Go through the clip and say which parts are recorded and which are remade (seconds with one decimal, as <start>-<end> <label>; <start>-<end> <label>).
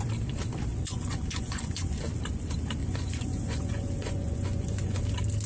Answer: 0.0-0.7 recorded; 0.7-2.0 remade; 2.0-2.8 recorded; 2.8-5.0 remade; 5.0-5.5 recorded